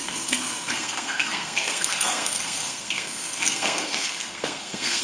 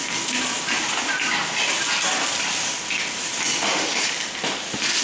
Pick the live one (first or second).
second